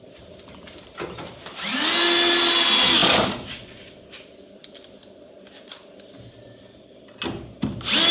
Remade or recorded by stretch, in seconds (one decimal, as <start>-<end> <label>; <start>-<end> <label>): 0.0-8.1 recorded